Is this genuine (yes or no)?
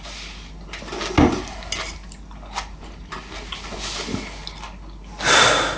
yes